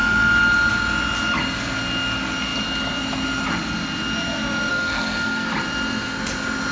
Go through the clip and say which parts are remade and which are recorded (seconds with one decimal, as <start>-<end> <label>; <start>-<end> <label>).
0.0-4.7 recorded; 4.7-5.5 remade; 5.5-6.7 recorded